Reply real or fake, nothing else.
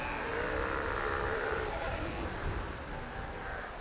real